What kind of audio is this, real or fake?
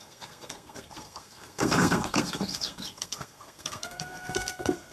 fake